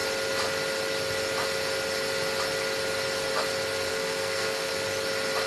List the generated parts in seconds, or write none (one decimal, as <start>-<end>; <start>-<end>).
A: 3.9-4.7